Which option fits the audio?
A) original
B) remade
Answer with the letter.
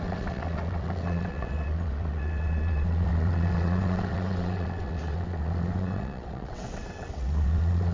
B